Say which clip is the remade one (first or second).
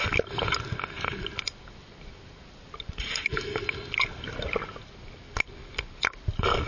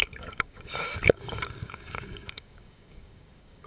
second